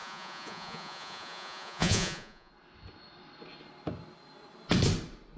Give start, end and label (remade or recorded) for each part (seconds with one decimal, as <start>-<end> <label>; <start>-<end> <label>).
0.0-2.5 remade; 2.5-5.4 recorded